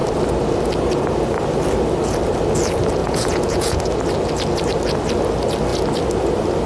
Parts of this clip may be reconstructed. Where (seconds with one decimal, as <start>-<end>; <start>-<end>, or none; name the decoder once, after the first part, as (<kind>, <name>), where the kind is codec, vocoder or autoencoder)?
3.0-3.8 (vocoder, Vocos)

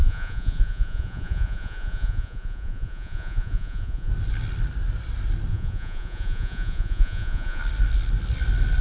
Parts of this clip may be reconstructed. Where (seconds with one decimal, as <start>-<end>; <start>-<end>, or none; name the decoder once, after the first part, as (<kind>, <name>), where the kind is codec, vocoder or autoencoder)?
0.0-4.1 (vocoder, Vocos); 5.5-7.6

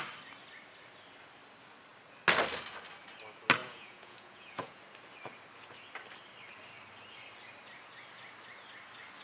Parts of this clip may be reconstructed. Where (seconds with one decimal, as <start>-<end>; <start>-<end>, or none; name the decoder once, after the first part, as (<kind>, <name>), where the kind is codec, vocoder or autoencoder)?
3.6-4.8 (vocoder, Vocos)

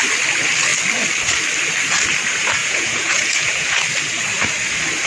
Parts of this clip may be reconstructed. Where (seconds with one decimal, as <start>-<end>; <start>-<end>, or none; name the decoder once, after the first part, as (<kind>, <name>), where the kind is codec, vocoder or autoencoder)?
2.6-3.8 (vocoder, Vocos)